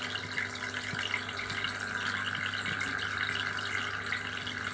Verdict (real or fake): real